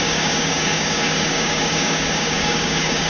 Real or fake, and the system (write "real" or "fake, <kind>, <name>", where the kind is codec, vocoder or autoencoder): fake, codec, DAC